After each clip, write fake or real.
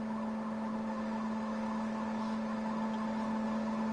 real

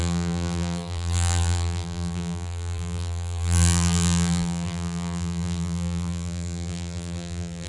fake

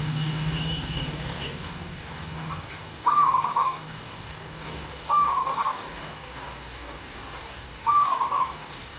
fake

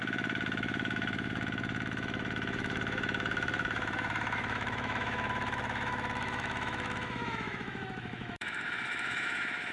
fake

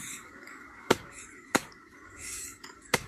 fake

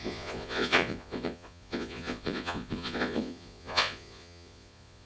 fake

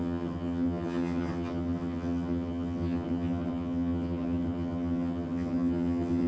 fake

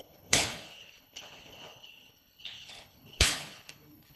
fake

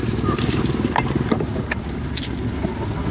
real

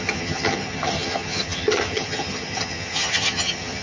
fake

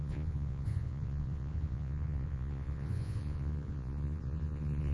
fake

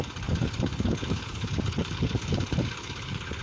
fake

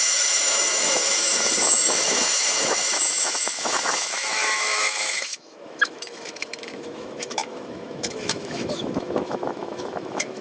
fake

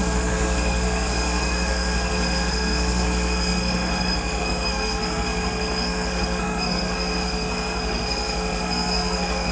fake